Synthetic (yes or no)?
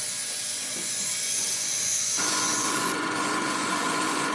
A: yes